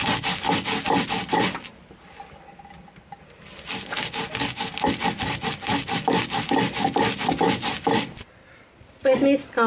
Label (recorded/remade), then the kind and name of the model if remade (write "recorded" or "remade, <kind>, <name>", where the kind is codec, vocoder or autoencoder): recorded